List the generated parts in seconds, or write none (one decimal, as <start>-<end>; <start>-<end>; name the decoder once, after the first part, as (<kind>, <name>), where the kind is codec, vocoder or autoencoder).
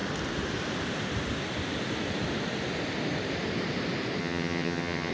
4.2-5.1 (vocoder, HiFi-GAN)